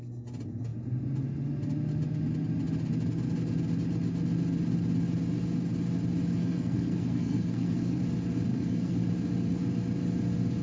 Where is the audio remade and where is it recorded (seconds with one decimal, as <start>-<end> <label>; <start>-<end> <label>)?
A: 0.0-6.4 recorded; 6.4-8.0 remade; 8.0-8.5 recorded; 8.5-9.1 remade; 9.1-10.6 recorded